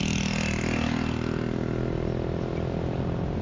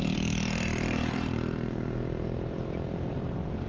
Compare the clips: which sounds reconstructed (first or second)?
second